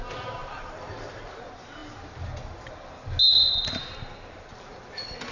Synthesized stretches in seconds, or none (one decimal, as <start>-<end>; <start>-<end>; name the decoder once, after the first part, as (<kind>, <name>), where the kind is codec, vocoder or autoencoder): none

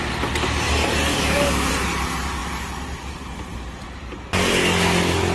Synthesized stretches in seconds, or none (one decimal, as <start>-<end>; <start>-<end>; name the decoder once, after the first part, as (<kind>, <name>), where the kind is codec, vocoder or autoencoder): 1.1-1.7 (codec, DAC)

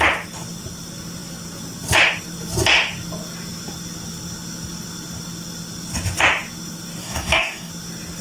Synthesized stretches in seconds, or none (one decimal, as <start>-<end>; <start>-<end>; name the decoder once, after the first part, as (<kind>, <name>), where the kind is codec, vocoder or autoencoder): 7.0-7.7 (codec, DAC)

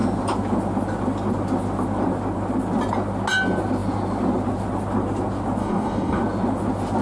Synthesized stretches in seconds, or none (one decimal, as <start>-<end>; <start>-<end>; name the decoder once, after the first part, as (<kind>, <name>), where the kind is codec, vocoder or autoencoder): 5.6-6.2 (codec, DAC)